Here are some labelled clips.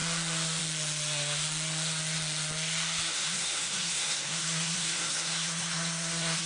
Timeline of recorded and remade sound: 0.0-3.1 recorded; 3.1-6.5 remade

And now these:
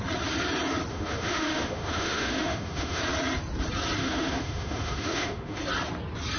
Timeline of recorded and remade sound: 0.0-0.9 recorded; 0.9-3.0 remade; 3.0-4.0 recorded; 4.0-5.6 remade; 5.6-6.4 recorded

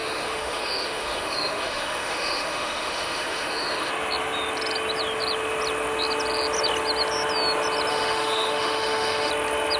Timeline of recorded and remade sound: 0.0-3.9 remade; 3.9-7.9 recorded; 7.9-9.3 remade; 9.3-9.8 recorded

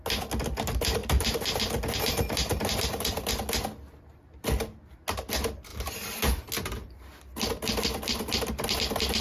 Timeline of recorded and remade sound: 0.0-1.0 recorded; 1.0-3.3 remade; 3.3-5.7 recorded; 5.7-6.4 remade; 6.4-9.2 recorded

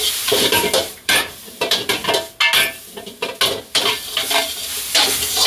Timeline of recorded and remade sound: 0.0-2.0 remade; 2.0-3.6 recorded; 3.6-5.5 remade